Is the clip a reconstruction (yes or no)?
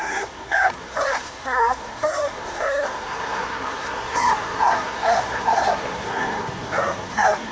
yes